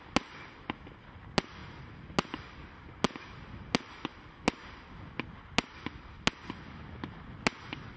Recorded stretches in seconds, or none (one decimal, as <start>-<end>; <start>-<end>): 0.0-8.0